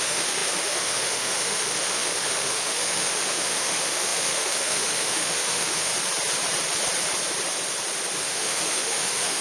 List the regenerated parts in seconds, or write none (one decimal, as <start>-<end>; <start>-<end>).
0.0-5.9; 8.2-9.4